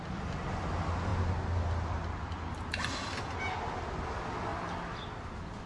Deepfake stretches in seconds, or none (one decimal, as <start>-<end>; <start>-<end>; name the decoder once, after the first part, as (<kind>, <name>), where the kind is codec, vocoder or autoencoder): none